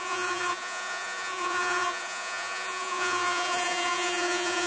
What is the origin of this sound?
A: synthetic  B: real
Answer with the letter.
A